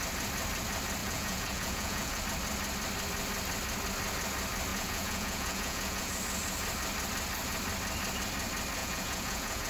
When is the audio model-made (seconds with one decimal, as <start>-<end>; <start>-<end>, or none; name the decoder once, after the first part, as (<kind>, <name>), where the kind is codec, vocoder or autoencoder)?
1.0-2.2 (vocoder, Vocos); 4.7-6.1; 8.8-9.7